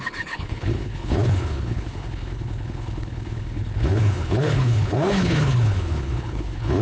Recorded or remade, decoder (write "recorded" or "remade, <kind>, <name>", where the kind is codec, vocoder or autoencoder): remade, codec, HILCodec